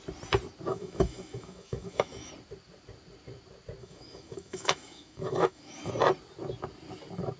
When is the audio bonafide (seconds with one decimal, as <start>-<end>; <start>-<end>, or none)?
0.0-0.7; 2.3-3.8; 5.9-7.4